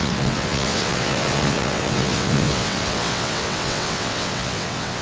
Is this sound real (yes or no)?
no